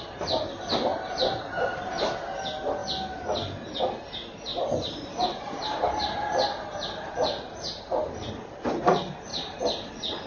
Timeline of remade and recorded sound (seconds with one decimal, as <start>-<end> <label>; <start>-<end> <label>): 0.0-0.9 recorded; 0.9-2.0 remade; 2.0-4.5 recorded; 4.5-8.3 remade; 8.3-9.3 recorded; 9.3-9.9 remade; 9.9-10.3 recorded